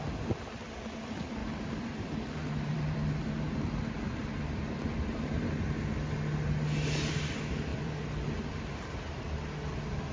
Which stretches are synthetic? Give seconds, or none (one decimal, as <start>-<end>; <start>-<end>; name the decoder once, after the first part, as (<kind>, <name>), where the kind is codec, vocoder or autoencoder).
1.4-3.1 (vocoder, BigVGAN v2); 4.2-4.9; 7.7-8.3